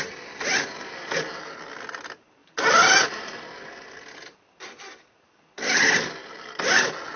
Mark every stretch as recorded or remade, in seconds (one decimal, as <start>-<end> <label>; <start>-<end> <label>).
0.0-7.2 recorded